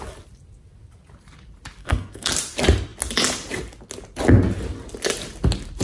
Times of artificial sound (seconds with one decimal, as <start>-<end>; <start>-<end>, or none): 1.8-2.3